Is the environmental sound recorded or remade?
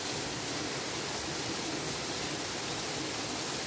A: recorded